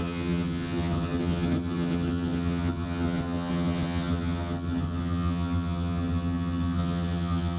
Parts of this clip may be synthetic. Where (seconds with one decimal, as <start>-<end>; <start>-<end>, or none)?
0.0-7.6